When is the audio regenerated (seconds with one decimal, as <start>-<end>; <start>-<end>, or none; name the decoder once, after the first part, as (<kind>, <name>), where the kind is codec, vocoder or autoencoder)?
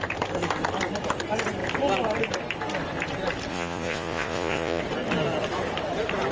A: 3.5-4.8 (vocoder, Vocos)